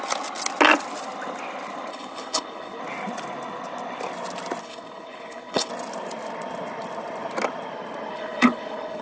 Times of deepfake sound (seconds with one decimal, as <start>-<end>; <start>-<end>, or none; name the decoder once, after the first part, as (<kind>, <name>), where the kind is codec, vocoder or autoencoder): 1.9-2.8 (codec, HILCodec); 4.6-5.7; 8.1-9.0